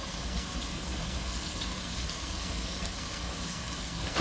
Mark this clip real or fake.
fake